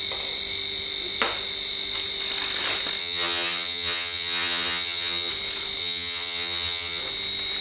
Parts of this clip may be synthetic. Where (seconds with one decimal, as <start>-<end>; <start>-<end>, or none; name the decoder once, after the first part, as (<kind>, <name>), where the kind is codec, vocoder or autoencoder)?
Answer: 3.0-5.3 (vocoder, HiFi-GAN); 5.8-7.0